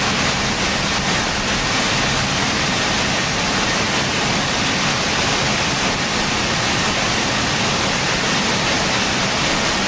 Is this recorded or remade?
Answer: recorded